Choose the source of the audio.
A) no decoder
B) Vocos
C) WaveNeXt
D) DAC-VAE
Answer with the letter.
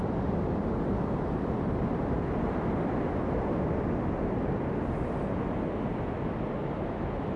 A